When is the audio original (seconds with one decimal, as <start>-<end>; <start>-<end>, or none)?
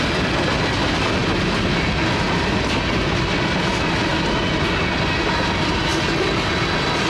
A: 0.0-7.1